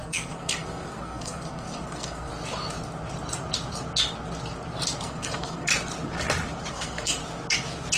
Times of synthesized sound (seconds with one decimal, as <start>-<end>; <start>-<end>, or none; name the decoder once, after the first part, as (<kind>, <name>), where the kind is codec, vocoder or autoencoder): 0.0-2.3 (codec, SNAC); 5.0-5.7; 6.7-7.2